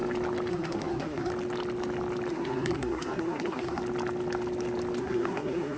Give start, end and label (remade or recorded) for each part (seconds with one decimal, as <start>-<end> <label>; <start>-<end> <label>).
0.0-0.5 recorded; 0.5-1.3 remade; 1.3-2.3 recorded; 2.3-3.8 remade; 3.8-5.0 recorded; 5.0-5.8 remade

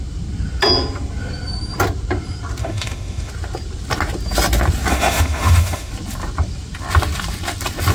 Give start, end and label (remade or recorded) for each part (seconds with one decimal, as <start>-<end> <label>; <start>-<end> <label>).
0.0-2.6 recorded; 2.6-3.3 remade; 3.3-4.9 recorded; 4.9-5.9 remade; 5.9-7.9 recorded

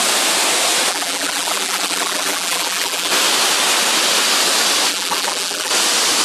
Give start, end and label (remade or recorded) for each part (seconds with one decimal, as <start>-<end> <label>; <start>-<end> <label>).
0.0-0.9 recorded; 0.9-3.1 remade; 3.1-4.9 recorded; 4.9-5.7 remade; 5.7-6.2 recorded

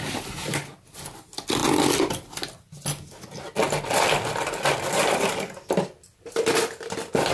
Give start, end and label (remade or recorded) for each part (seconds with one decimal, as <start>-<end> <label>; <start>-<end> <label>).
0.0-7.3 recorded

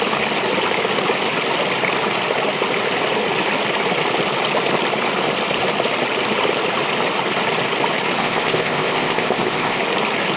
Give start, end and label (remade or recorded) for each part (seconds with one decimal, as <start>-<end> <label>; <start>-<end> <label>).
0.0-8.2 recorded; 8.2-9.8 remade; 9.8-10.4 recorded

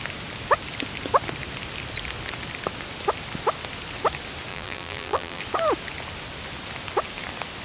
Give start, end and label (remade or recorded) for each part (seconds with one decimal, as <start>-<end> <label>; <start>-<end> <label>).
0.0-4.5 recorded; 4.5-5.4 remade; 5.4-7.6 recorded